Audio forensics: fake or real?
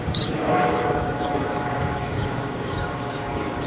fake